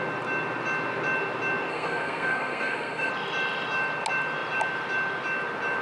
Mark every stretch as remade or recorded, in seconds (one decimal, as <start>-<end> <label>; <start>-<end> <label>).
0.0-1.7 recorded; 1.7-3.1 remade; 3.1-5.8 recorded